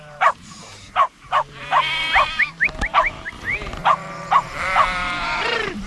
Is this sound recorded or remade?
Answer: remade